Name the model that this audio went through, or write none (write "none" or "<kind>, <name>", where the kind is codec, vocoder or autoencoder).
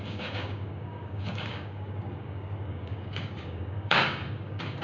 codec, DAC